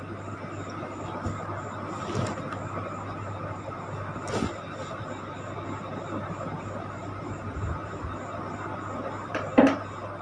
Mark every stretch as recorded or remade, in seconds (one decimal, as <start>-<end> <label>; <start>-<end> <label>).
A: 0.0-10.2 recorded